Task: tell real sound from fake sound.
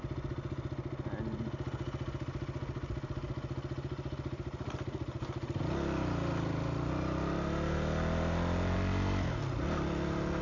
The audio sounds real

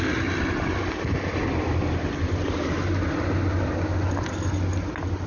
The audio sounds real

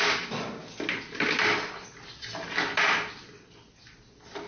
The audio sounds real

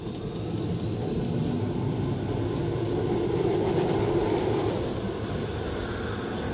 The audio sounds real